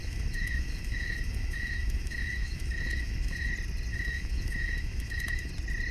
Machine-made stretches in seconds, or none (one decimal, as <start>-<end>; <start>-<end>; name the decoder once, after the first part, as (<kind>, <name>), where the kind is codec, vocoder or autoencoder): 0.0-3.5 (autoencoder, DAC-VAE); 3.9-5.5

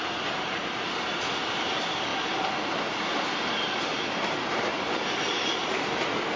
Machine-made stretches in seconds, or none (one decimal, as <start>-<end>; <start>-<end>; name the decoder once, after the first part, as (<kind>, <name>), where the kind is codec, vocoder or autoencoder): 0.0-2.1 (vocoder, BigVGAN v2); 3.8-4.7; 5.3-6.4

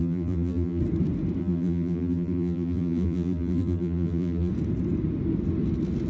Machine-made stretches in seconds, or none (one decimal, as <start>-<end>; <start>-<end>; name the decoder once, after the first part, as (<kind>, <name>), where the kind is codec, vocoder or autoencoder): 0.0-0.8 (vocoder, BigVGAN v2); 1.4-4.5